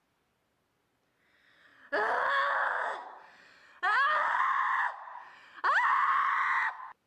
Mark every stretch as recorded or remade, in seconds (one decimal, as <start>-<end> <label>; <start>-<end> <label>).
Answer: 0.0-7.1 recorded